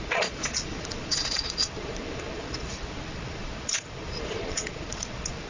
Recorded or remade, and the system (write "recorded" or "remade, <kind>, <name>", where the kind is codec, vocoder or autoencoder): remade, vocoder, Vocos